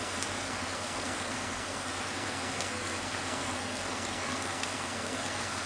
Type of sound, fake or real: fake